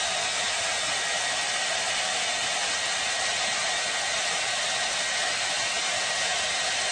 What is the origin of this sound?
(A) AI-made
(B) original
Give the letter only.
B